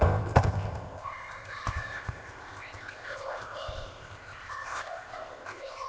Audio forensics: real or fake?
fake